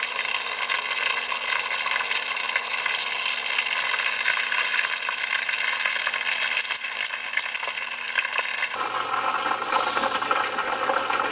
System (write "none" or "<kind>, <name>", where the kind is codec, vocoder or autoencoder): none